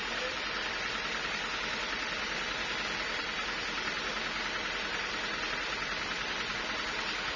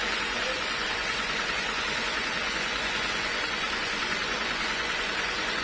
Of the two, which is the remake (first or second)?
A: second